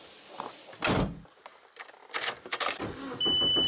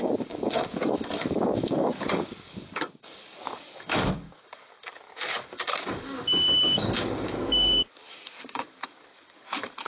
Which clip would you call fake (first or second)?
second